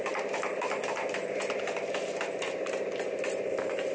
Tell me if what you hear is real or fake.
real